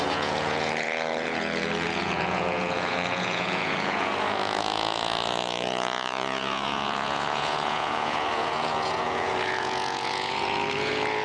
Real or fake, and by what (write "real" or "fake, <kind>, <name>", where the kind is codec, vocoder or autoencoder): fake, vocoder, Vocos